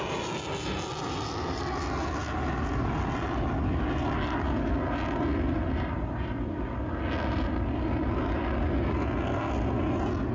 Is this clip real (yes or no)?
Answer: yes